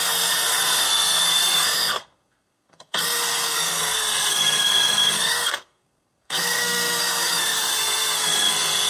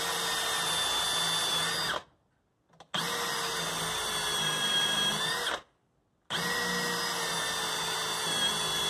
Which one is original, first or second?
second